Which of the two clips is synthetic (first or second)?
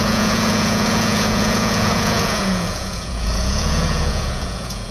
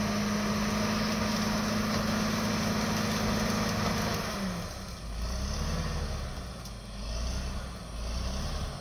first